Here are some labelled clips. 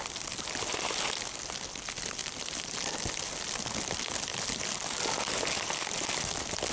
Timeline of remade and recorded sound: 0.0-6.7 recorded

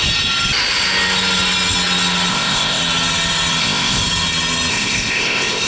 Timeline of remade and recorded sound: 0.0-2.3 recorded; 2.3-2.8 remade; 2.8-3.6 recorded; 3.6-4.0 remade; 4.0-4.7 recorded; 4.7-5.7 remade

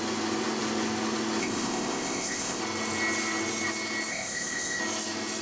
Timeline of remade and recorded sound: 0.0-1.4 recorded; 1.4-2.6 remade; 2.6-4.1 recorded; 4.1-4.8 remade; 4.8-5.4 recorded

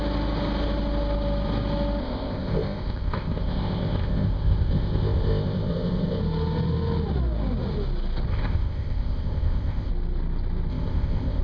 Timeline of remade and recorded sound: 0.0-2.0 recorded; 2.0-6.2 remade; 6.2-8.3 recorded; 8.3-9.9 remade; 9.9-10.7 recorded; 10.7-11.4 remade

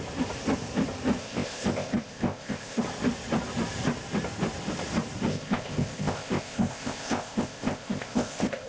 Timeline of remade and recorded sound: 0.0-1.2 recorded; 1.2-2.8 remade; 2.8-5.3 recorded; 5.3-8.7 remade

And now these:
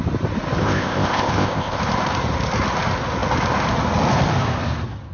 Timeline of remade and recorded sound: 0.0-0.6 recorded; 0.6-1.8 remade; 1.8-5.1 recorded